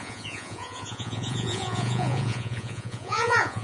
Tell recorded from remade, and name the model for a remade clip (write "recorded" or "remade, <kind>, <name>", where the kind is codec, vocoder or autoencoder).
remade, vocoder, Vocos